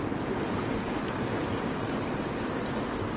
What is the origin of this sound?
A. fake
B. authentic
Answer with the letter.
B